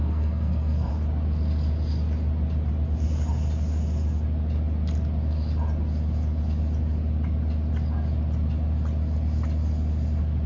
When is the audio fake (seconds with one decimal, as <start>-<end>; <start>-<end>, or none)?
0.0-0.9